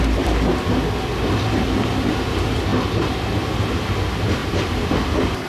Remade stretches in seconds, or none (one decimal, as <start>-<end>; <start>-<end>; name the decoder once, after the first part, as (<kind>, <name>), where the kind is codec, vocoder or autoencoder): 4.4-4.9 (vocoder, BigVGAN v2)